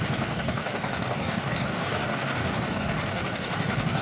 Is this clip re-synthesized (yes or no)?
yes